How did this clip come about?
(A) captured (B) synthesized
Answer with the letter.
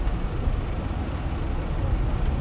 A